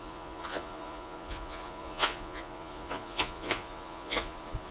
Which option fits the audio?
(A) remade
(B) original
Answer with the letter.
A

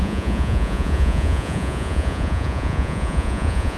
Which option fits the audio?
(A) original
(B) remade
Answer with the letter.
B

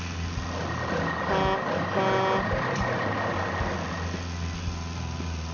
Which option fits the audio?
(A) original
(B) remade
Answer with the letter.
A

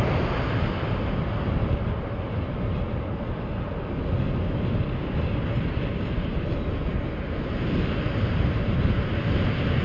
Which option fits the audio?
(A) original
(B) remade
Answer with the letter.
A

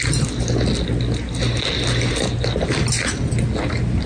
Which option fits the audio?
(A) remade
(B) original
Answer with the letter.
B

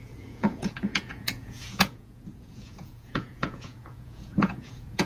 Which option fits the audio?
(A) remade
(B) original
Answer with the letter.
A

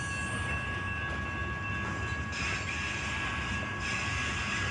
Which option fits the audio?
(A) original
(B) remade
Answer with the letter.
A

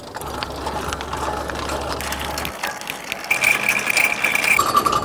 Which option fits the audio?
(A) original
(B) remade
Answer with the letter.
A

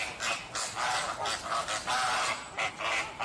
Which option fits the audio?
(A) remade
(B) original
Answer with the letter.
B